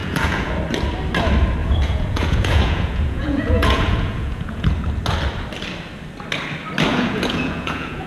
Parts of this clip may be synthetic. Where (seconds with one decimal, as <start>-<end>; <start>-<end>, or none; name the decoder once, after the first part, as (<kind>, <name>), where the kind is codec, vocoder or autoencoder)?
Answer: 0.0-0.5 (vocoder, Vocos); 1.6-4.7; 6.9-8.1